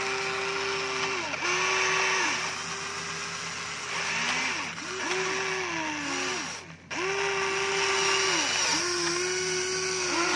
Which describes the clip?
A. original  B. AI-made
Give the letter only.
A